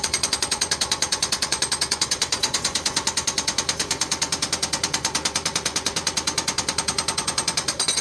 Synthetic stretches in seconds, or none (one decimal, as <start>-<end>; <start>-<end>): 0.0-8.0